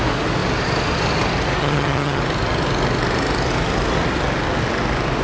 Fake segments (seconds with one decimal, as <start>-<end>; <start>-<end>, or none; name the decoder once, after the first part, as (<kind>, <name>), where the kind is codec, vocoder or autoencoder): 1.6-2.2 (vocoder, HiFi-GAN)